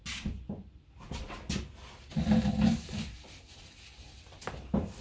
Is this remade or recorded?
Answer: recorded